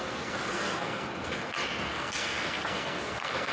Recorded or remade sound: remade